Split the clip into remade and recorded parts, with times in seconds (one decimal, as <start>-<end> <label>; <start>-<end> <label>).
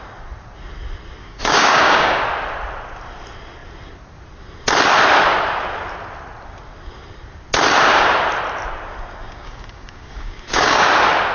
0.0-1.2 recorded; 1.2-2.2 remade; 2.2-9.2 recorded; 9.2-10.9 remade; 10.9-11.3 recorded